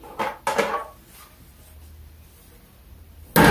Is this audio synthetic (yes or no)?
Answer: no